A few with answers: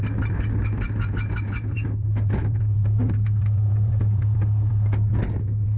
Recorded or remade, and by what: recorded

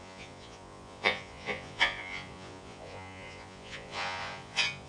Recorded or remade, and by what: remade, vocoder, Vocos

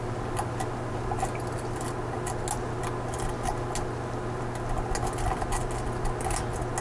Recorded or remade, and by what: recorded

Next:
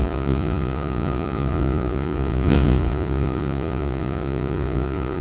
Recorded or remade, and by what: remade, vocoder, Vocos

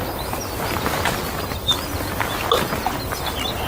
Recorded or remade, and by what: recorded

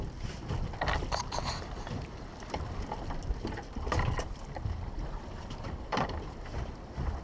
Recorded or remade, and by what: remade, vocoder, BigVGAN v2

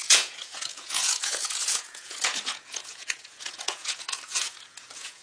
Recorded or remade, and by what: remade, vocoder, Vocos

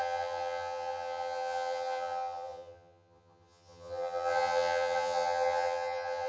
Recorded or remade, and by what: remade, vocoder, HiFi-GAN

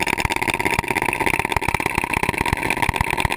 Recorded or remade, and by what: recorded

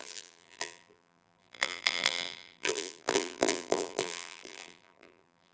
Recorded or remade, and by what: remade, vocoder, BigVGAN v2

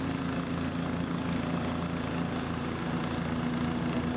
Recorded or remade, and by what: recorded